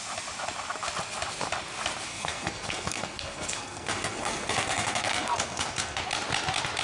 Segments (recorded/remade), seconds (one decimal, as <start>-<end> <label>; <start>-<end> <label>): 0.0-2.1 recorded; 2.1-6.0 remade; 6.0-6.8 recorded